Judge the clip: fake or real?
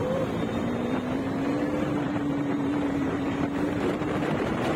fake